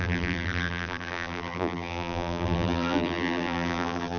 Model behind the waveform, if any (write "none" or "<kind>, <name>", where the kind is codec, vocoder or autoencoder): vocoder, BigVGAN v2